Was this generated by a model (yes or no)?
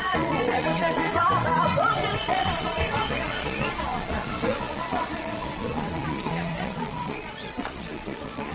yes